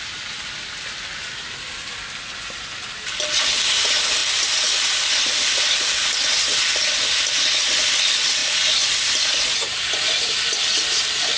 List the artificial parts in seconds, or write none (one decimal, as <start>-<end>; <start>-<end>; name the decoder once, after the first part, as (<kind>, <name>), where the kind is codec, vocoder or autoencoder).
none